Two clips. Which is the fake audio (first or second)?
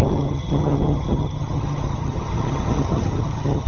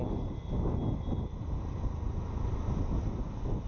first